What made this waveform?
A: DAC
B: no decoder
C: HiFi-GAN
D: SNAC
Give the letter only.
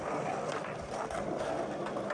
B